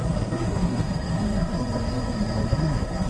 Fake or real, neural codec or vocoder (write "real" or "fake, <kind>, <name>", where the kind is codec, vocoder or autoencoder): fake, codec, SNAC